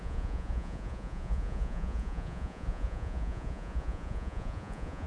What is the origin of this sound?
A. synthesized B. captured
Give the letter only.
A